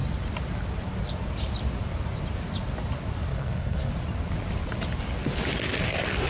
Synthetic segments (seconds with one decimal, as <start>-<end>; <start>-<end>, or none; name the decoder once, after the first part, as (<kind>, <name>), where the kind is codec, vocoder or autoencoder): 3.3-3.9 (codec, SNAC)